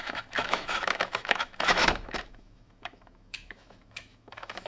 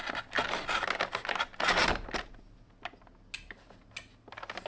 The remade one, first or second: first